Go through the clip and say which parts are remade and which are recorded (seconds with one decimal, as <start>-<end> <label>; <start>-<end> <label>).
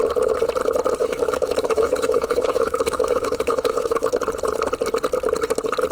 0.0-1.0 recorded; 1.0-4.1 remade; 4.1-5.9 recorded